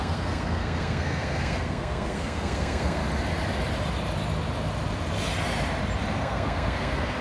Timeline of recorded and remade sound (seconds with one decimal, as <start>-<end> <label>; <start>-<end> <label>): 0.0-3.0 remade; 3.0-6.2 recorded; 6.2-7.2 remade